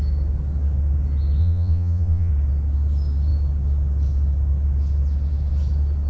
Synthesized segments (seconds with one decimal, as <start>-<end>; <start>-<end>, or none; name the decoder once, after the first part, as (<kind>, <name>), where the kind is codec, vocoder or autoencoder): 1.4-2.3 (vocoder, Vocos)